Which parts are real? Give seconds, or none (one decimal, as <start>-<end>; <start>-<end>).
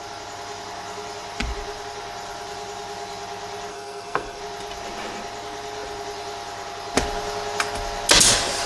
0.0-3.7; 4.4-8.7